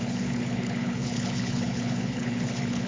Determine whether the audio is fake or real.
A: fake